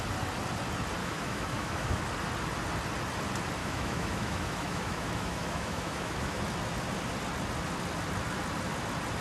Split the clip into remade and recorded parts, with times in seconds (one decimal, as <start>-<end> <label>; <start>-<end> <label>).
0.0-1.0 recorded; 1.0-2.0 remade; 2.0-3.6 recorded; 3.6-6.4 remade; 6.4-9.2 recorded